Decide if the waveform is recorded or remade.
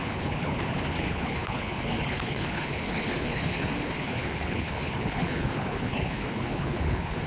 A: remade